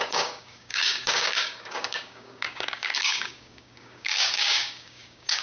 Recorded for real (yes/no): no